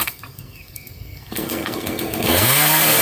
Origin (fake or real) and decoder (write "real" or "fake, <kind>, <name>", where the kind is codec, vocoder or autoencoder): fake, codec, SNAC